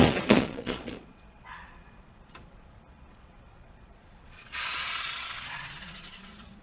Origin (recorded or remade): remade